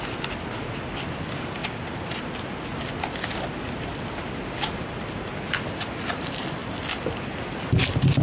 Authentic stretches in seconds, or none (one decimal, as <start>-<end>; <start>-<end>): 0.0-8.2